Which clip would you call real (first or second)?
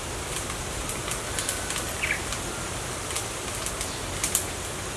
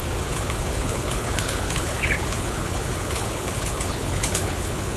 first